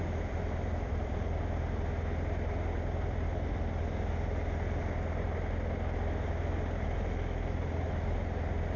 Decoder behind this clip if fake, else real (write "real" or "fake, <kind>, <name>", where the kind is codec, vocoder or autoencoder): real